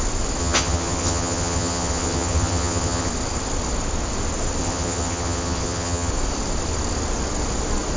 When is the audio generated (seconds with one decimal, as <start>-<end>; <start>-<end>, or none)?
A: 0.4-3.1; 4.6-6.1